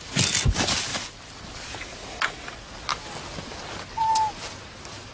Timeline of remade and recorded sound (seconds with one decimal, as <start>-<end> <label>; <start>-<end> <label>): 0.0-5.1 recorded